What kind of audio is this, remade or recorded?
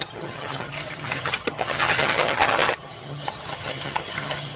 remade